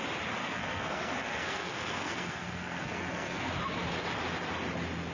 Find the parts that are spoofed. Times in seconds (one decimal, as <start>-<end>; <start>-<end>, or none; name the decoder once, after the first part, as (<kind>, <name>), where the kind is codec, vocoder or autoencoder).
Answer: 0.4-3.5 (codec, SNAC)

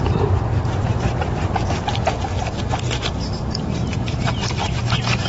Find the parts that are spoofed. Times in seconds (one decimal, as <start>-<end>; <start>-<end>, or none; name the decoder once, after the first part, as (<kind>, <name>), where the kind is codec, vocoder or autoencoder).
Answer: 2.0-5.3 (vocoder, BigVGAN v2)